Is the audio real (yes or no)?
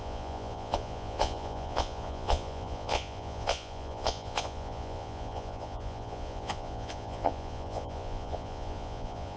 no